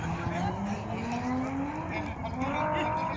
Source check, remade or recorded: recorded